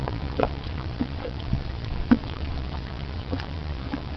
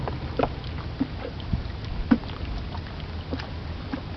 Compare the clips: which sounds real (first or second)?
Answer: second